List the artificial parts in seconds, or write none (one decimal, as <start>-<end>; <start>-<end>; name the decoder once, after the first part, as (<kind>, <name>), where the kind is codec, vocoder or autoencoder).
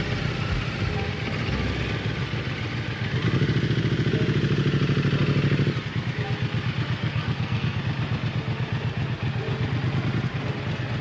7.0-7.8 (codec, SNAC)